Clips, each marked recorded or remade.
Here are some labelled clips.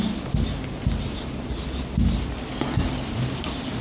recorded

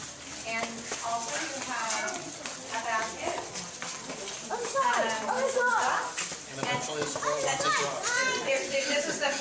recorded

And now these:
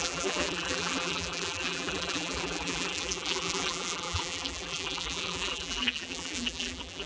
remade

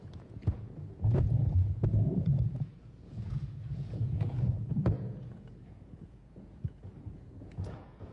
remade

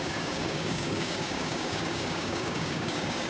remade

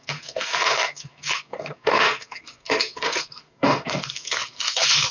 remade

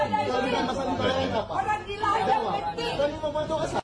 recorded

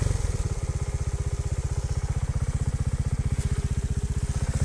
recorded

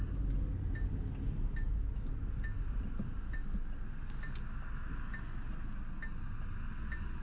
recorded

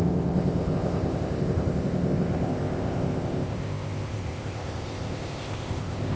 remade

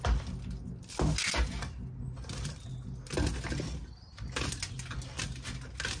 recorded